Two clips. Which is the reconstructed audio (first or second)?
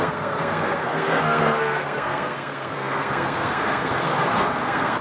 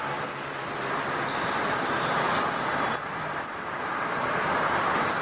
first